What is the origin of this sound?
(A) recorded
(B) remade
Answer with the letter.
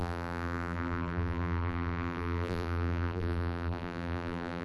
B